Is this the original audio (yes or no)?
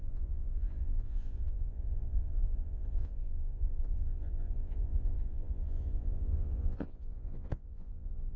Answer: no